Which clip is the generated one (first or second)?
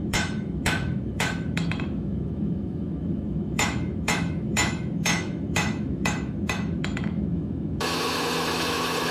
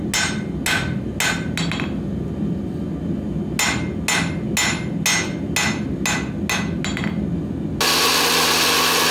first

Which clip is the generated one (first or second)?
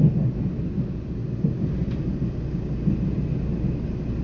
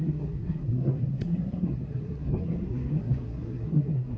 second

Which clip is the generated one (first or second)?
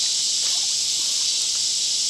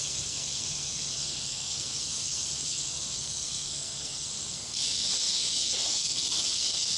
second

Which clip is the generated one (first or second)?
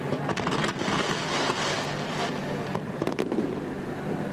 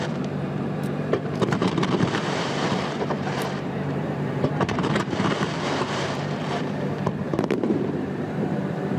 second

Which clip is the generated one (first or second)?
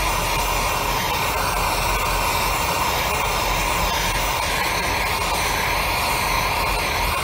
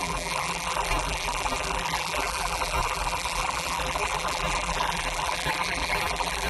second